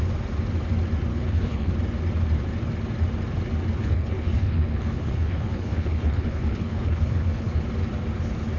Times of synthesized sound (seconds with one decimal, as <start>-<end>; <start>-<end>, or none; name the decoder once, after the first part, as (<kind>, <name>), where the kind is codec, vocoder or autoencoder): 1.1-1.7 (codec, HILCodec); 3.8-7.6